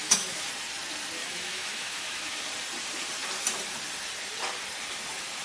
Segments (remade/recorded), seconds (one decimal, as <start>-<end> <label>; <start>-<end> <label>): 0.0-0.5 remade; 0.5-1.2 recorded; 1.2-2.4 remade; 2.4-5.4 recorded